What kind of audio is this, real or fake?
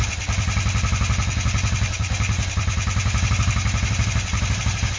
real